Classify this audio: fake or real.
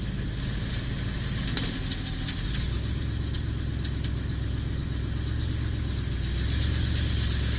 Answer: real